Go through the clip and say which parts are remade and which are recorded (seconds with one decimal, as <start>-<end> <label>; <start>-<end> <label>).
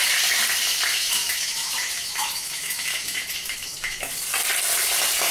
0.0-0.9 recorded; 0.9-4.1 remade; 4.1-5.3 recorded